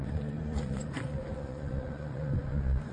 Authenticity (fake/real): fake